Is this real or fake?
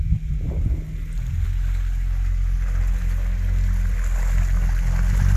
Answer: real